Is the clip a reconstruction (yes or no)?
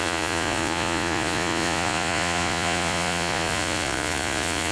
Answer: yes